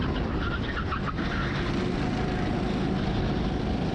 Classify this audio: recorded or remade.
recorded